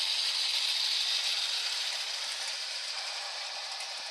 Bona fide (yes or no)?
yes